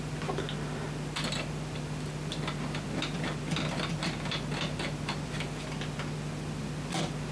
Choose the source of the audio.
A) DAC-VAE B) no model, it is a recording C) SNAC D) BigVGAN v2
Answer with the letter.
B